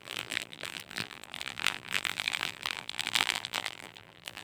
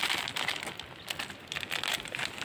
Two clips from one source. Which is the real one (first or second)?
second